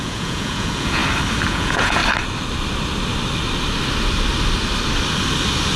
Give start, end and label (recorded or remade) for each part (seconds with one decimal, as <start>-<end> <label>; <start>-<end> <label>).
0.0-1.0 remade; 1.0-1.5 recorded; 1.5-2.0 remade; 2.0-5.8 recorded